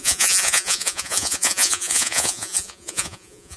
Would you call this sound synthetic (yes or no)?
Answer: yes